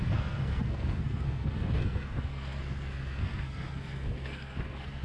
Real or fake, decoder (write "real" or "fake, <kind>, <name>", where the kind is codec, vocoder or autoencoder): fake, codec, SNAC